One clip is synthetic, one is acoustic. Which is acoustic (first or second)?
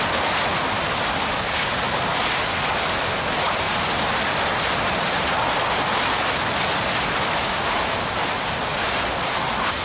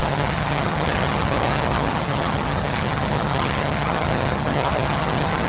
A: first